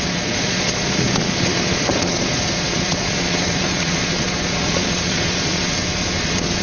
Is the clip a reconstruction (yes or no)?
yes